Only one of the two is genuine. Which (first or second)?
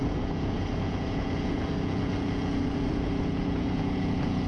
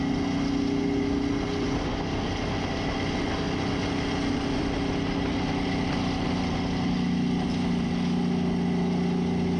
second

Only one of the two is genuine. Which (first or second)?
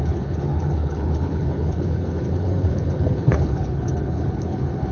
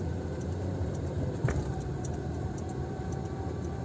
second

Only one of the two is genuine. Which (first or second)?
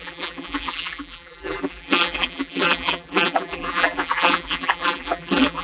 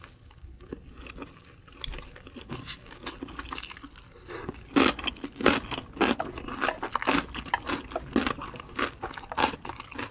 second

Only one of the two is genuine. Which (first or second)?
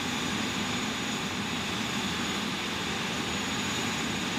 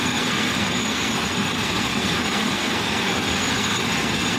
first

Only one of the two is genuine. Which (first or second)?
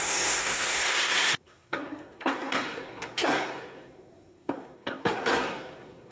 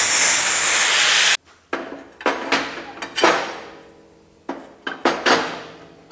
second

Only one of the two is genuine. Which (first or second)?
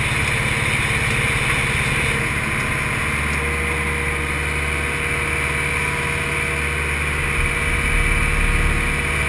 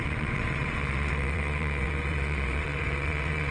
first